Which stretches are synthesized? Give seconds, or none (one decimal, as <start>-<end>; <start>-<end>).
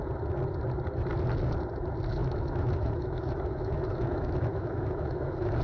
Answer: 2.2-5.6